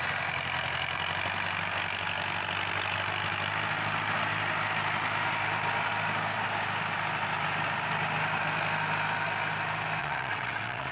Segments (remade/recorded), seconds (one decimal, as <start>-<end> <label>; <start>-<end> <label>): 0.0-10.0 recorded; 10.0-10.9 remade

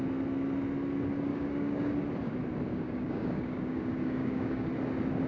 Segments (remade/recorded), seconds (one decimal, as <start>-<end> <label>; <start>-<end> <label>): 0.0-1.3 recorded; 1.3-1.9 remade; 1.9-2.7 recorded; 2.7-4.7 remade; 4.7-5.3 recorded